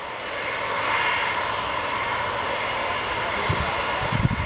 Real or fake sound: real